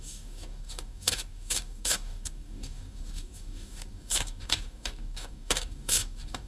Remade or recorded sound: remade